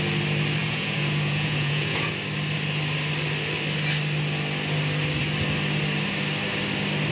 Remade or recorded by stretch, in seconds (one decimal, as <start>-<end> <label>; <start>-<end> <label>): 0.0-0.6 recorded; 0.6-2.1 remade; 2.1-7.1 recorded